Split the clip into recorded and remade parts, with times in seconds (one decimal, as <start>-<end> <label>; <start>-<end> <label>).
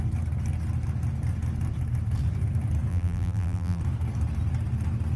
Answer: 0.0-2.9 recorded; 2.9-3.8 remade; 3.8-5.2 recorded